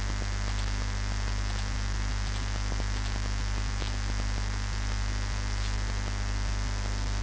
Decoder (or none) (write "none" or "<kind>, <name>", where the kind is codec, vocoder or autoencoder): none